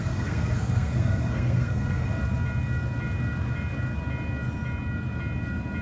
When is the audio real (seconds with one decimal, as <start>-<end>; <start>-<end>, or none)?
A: 2.1-5.8